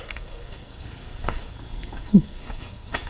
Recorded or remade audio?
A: remade